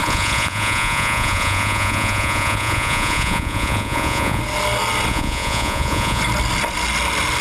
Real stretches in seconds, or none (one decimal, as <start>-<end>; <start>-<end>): 4.4-5.1; 6.2-7.4